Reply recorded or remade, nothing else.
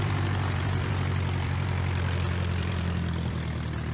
remade